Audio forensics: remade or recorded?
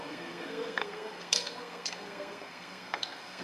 remade